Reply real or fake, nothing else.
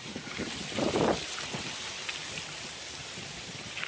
real